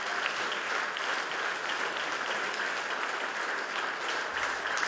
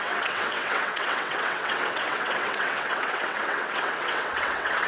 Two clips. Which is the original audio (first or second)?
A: first